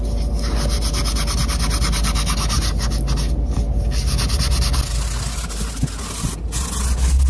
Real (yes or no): yes